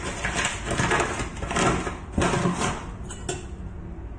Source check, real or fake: real